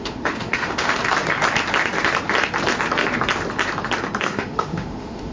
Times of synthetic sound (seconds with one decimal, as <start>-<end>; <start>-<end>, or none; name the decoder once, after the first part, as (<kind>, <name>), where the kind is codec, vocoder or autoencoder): 0.0-1.0 (autoencoder, DAC-VAE); 4.2-5.3